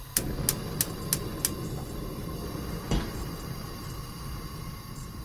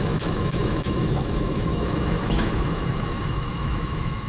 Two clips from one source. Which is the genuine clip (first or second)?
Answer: first